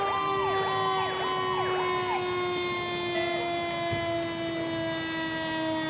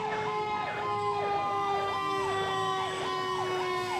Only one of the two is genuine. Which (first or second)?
first